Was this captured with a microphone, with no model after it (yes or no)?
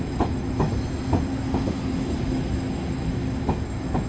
yes